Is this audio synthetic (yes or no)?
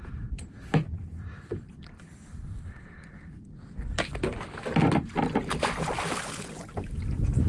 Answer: no